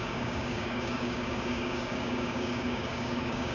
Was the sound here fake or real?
fake